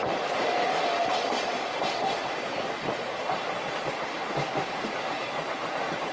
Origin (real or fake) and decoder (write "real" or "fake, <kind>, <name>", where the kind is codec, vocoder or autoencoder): fake, vocoder, BigVGAN v2